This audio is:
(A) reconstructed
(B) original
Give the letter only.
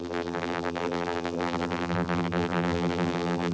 A